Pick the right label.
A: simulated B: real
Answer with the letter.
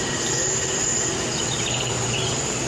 B